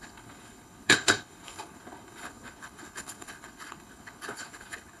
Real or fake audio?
fake